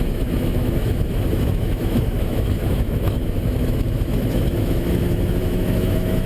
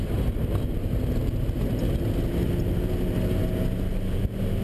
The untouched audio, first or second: second